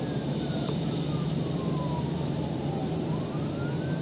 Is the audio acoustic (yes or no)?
no